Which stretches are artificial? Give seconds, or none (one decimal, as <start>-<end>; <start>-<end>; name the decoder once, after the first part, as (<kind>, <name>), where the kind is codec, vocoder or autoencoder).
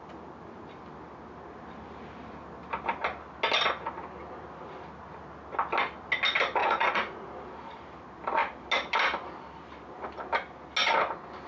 6.6-7.3 (vocoder, Vocos)